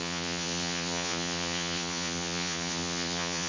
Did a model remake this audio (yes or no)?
yes